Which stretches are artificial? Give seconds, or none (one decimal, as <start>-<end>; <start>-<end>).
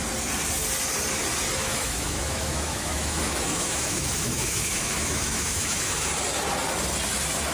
1.6-6.1